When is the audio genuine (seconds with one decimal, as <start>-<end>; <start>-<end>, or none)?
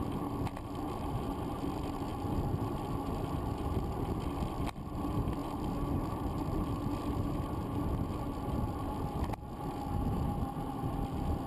0.0-11.5